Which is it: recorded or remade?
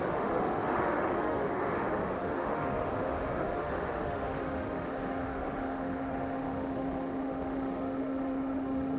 remade